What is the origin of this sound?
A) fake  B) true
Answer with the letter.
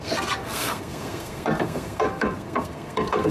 A